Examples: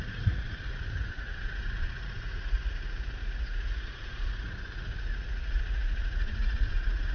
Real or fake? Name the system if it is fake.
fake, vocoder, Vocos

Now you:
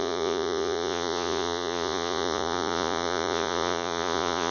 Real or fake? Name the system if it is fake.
fake, vocoder, Vocos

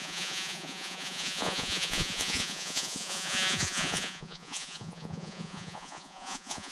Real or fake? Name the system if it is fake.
fake, vocoder, Vocos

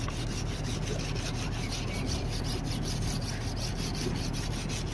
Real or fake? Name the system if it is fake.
real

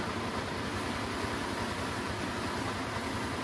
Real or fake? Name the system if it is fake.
real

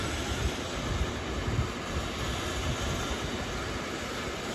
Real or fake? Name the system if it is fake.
real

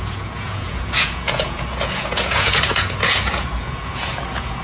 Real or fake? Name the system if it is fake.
fake, vocoder, Vocos